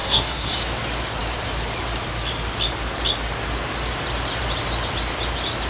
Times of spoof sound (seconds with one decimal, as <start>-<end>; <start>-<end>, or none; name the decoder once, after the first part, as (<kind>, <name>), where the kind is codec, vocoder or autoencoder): 0.0-0.5 (codec, SNAC)